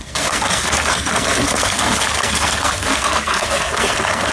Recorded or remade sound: remade